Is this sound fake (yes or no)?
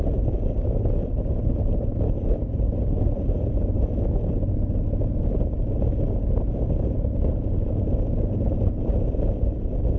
no